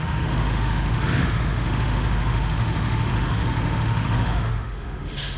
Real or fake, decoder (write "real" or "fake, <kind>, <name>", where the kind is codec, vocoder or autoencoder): fake, autoencoder, DAC-VAE